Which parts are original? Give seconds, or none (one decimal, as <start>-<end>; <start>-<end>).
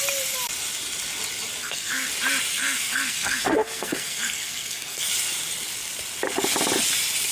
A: 0.0-1.6; 2.1-2.5; 5.1-7.3